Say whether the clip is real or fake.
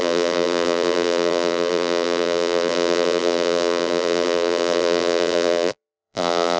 fake